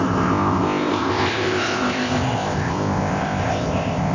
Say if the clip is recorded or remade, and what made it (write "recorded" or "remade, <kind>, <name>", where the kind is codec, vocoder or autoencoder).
remade, codec, ZipCodec